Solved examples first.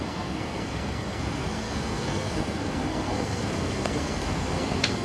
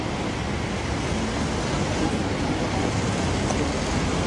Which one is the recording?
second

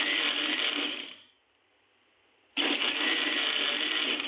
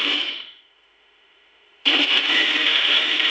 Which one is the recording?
first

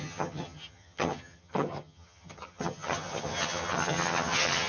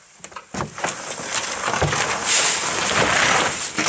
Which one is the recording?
second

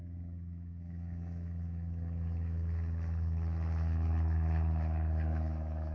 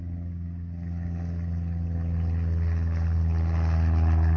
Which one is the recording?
second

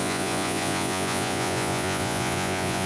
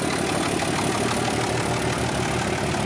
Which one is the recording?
second